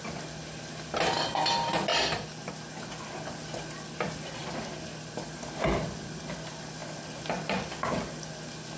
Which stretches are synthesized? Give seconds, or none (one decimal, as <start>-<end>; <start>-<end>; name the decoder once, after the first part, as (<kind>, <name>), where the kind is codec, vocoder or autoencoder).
1.9-2.5 (vocoder, BigVGAN v2); 4.4-5.0